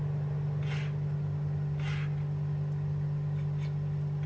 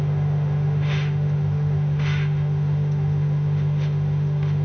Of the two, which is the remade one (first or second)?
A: second